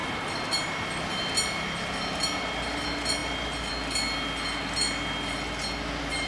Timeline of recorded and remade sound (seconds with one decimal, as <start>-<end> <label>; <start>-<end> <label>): 0.0-1.1 remade; 1.1-6.3 recorded